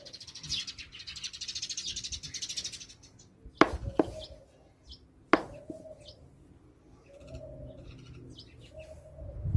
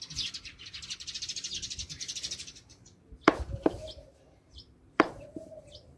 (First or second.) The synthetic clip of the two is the second